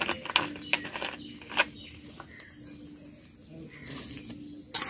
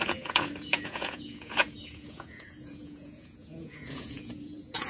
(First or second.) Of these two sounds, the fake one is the second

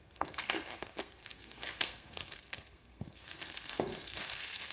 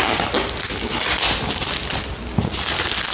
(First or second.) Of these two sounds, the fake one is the first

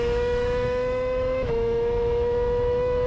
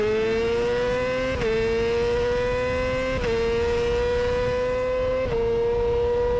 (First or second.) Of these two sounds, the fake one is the first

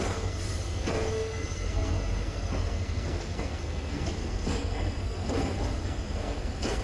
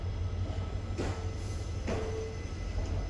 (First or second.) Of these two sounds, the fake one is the first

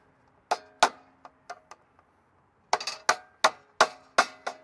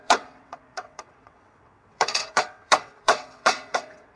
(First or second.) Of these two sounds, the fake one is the second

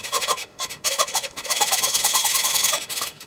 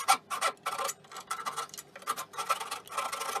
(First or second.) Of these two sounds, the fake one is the first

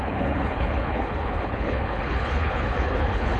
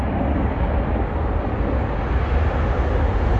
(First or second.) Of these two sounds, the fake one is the first